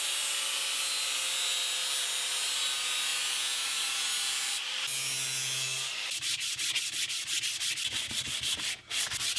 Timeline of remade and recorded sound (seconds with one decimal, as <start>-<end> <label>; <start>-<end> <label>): 0.0-9.4 recorded